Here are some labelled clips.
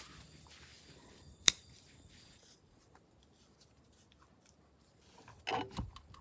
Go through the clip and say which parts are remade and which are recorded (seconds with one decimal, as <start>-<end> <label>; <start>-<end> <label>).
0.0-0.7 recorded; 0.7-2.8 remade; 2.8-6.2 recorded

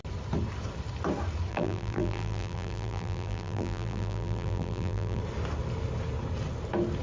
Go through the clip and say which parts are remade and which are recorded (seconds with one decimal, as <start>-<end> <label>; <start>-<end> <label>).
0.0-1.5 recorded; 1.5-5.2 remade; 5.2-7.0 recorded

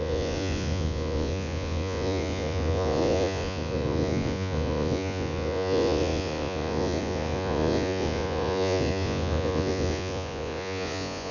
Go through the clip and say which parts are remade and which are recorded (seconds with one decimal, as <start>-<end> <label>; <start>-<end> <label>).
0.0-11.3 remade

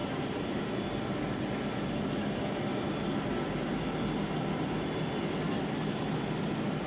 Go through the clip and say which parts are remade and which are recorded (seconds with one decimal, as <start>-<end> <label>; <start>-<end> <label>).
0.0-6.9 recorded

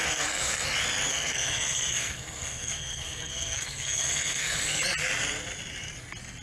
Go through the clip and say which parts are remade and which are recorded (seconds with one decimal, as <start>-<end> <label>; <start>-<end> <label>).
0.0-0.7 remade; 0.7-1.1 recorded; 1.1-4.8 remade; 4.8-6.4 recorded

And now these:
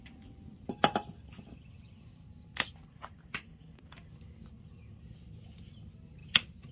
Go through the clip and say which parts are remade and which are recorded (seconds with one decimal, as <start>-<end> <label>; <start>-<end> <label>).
0.0-6.7 recorded

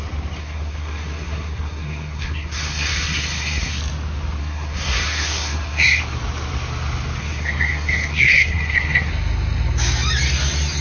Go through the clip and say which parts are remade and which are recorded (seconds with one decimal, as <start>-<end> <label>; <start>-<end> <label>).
0.0-0.4 recorded; 0.4-3.8 remade; 3.8-4.4 recorded; 4.4-6.0 remade; 6.0-7.2 recorded; 7.2-9.1 remade; 9.1-10.8 recorded